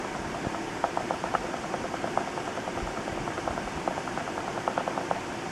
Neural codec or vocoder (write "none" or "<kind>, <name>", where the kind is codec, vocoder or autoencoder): none